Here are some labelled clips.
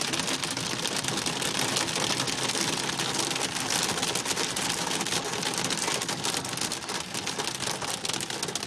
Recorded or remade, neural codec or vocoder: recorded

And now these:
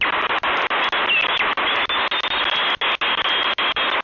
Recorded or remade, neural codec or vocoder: recorded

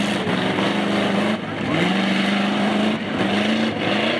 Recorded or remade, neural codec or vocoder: recorded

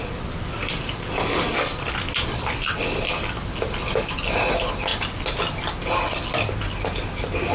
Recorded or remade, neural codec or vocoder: recorded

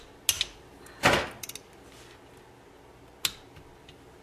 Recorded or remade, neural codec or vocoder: recorded